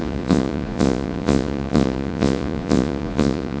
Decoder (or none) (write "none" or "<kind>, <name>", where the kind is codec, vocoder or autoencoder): vocoder, Vocos